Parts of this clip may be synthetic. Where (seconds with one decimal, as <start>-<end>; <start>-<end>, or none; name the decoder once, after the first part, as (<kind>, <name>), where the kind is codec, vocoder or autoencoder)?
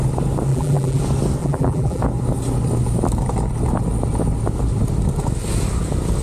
0.5-1.0 (vocoder, BigVGAN v2); 1.4-2.0